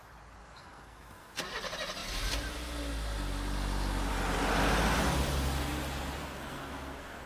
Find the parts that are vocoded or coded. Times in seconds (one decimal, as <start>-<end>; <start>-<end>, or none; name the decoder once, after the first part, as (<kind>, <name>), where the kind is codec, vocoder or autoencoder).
0.4-1.4 (codec, SNAC); 6.2-7.3

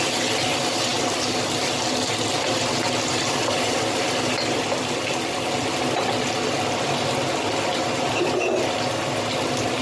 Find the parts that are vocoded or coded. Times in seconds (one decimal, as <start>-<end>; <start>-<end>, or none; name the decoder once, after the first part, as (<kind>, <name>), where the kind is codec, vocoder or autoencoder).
none

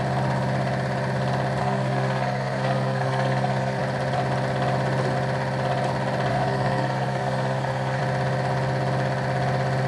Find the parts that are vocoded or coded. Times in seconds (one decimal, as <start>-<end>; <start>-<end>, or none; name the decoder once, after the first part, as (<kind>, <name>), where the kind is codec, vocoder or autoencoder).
1.6-3.8 (codec, SNAC); 6.3-8.0

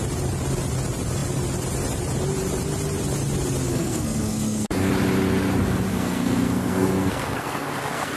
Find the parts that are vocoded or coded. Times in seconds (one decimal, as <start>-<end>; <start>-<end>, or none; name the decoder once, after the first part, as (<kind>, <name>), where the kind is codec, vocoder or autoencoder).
3.7-4.9 (codec, SNAC); 5.9-8.2

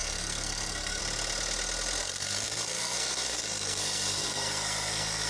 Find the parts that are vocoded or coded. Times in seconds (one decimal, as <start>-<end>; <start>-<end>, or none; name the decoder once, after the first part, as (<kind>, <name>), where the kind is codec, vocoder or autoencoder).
0.0-1.0 (codec, SNAC); 2.0-5.3